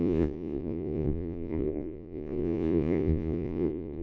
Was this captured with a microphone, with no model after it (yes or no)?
no